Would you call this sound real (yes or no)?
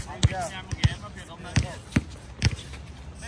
yes